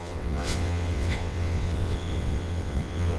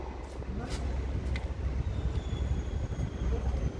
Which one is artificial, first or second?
first